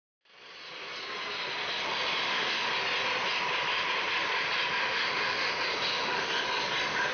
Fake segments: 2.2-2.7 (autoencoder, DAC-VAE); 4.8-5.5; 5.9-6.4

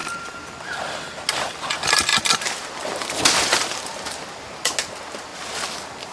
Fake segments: none